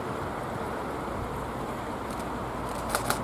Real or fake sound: real